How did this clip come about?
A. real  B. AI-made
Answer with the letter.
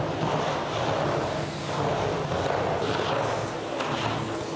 A